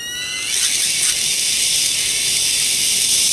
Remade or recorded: recorded